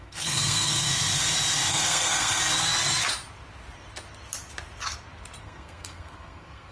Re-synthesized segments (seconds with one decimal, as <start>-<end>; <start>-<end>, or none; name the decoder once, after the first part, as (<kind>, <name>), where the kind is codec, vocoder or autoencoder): 0.0-0.9 (codec, SNAC); 1.7-2.4; 5.4-6.7